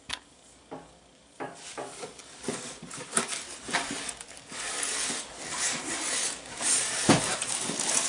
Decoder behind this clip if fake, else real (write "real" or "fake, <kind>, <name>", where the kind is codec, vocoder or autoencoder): fake, codec, DAC